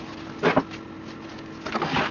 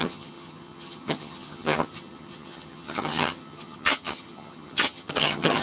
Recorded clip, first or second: first